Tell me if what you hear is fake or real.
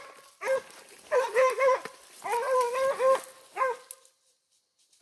real